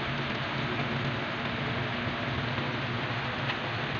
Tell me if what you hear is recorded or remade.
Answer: recorded